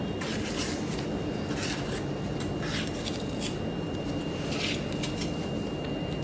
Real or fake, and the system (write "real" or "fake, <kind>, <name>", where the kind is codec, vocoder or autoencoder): real